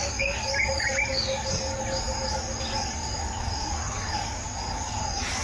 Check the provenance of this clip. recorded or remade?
remade